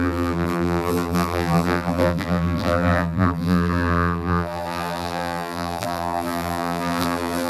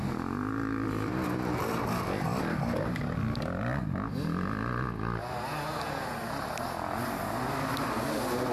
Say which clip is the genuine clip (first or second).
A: second